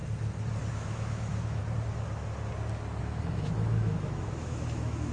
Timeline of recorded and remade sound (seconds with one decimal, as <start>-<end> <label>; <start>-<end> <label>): 0.0-0.7 recorded; 0.7-1.6 remade; 1.6-3.0 recorded; 3.0-5.1 remade